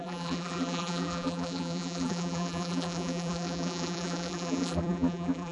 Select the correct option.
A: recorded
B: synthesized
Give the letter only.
B